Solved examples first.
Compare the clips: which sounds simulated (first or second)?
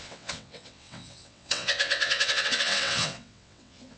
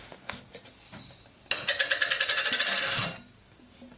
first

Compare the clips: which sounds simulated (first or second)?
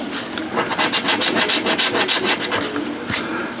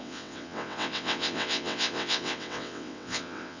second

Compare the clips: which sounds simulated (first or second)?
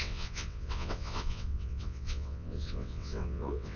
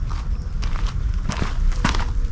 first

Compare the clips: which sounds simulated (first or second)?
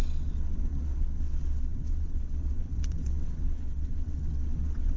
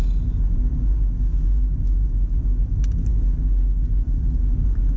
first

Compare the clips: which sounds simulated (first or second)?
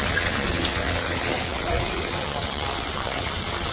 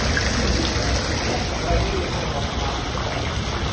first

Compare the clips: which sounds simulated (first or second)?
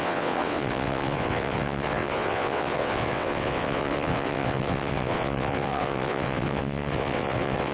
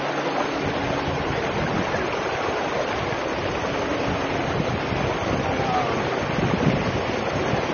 first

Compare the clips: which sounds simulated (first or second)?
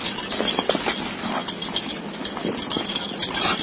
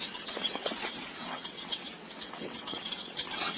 second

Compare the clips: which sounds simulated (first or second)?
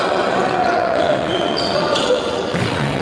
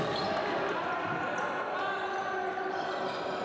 first